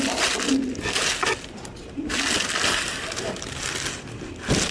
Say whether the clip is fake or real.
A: real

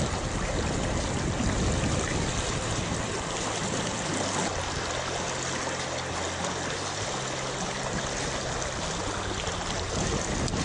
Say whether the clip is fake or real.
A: real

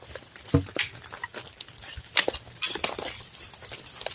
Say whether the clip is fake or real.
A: real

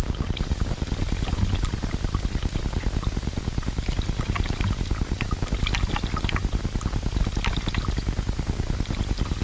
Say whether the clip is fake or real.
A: real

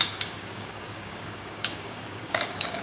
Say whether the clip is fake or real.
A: fake